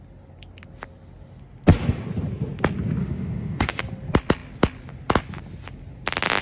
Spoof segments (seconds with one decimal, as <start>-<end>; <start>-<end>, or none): 3.0-3.8